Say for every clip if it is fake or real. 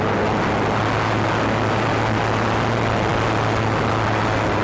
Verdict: real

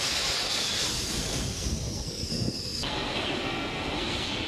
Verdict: fake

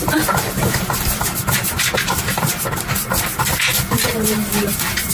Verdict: real